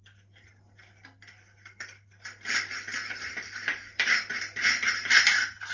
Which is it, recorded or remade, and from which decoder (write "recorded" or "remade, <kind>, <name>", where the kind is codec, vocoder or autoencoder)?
recorded